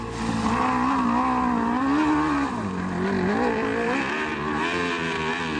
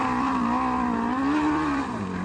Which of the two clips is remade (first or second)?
second